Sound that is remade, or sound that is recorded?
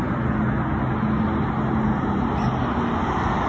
recorded